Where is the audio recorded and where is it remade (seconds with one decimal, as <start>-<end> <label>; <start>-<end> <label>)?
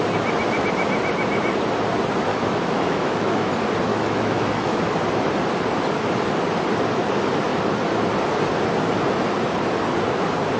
0.0-2.3 recorded; 2.3-3.5 remade; 3.5-3.9 recorded; 3.9-4.8 remade; 4.8-10.6 recorded